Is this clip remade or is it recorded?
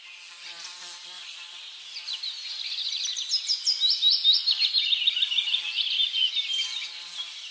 recorded